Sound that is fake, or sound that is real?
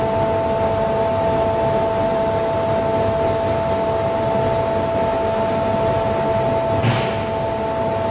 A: real